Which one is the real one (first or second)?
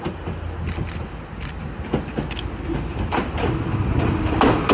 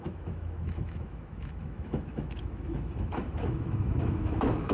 first